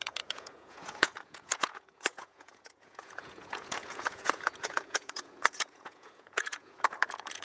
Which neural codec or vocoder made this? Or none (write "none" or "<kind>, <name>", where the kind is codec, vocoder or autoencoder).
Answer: vocoder, Vocos